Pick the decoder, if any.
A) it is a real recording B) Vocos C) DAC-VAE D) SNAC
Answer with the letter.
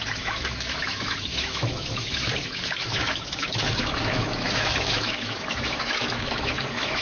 C